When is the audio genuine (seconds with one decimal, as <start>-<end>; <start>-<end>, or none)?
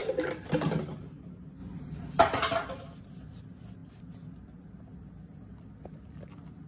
0.0-6.7